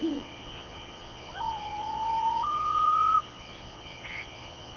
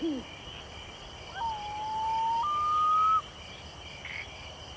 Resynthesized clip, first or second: first